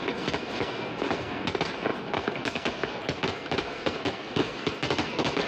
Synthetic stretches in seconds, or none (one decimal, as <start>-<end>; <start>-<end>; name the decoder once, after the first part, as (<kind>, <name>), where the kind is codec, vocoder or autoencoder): 0.0-5.5 (codec, SNAC)